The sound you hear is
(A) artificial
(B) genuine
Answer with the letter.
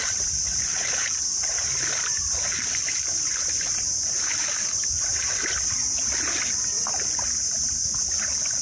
A